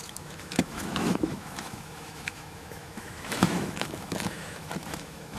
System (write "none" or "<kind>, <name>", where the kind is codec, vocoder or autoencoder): autoencoder, DAC-VAE